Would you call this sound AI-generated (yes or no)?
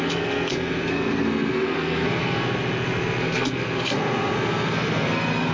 yes